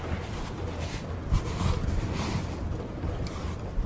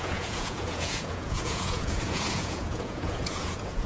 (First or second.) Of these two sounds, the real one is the first